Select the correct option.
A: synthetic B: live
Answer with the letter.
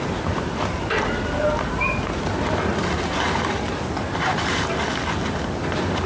B